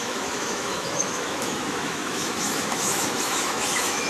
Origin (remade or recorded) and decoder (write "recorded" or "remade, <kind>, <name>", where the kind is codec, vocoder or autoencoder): remade, autoencoder, DAC-VAE